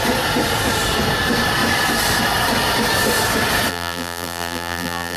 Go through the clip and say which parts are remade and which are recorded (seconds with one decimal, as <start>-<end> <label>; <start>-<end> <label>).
0.0-3.7 recorded; 3.7-5.2 remade